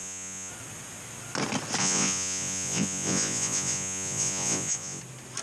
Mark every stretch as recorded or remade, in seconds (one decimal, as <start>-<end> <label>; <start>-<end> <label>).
0.0-0.5 remade; 0.5-1.8 recorded; 1.8-5.0 remade; 5.0-5.4 recorded